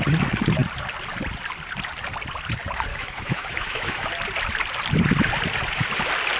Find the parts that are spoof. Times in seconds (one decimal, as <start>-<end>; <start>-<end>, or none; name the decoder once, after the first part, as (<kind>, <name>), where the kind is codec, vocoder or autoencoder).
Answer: 2.9-4.1 (autoencoder, DAC-VAE)